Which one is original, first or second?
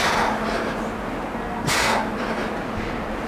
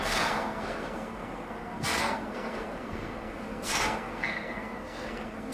first